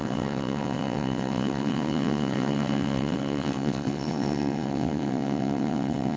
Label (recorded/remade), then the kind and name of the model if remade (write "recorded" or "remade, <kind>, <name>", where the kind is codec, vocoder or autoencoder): remade, vocoder, WaveNeXt